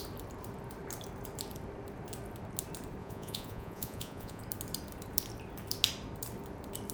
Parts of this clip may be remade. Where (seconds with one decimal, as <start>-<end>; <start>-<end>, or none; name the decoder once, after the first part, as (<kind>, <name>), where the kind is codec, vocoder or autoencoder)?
3.0-4.4 (vocoder, Vocos)